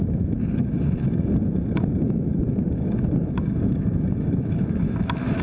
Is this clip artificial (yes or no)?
yes